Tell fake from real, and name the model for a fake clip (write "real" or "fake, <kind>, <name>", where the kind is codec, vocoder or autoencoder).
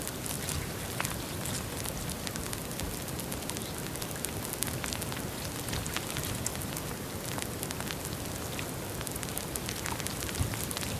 real